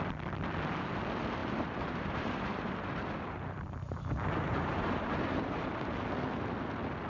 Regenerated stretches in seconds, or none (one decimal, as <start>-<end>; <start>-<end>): 1.4-5.7